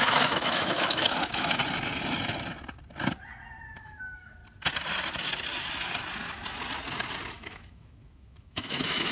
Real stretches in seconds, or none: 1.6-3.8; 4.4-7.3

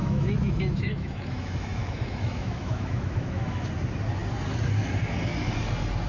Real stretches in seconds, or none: 3.7-6.1

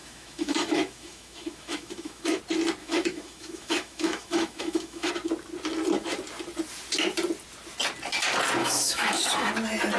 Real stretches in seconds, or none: 2.4-2.8; 5.1-8.6; 9.5-10.0

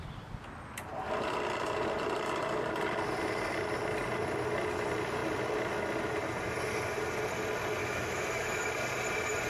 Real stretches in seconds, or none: 0.0-7.8; 8.7-9.5

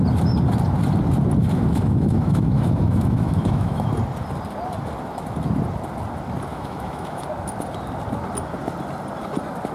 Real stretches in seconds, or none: 0.0-1.4; 3.9-6.5; 7.2-9.7

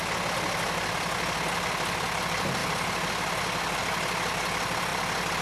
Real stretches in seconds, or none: 0.0-5.4

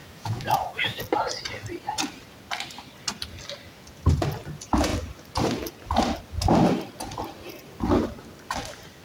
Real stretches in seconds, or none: 1.0-9.0

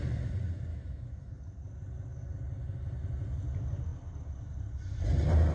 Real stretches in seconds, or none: 0.0-0.7; 1.3-5.5